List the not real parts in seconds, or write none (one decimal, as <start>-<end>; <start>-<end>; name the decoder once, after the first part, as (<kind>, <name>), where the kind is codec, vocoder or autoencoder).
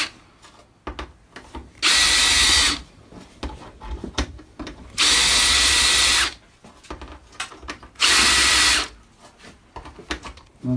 none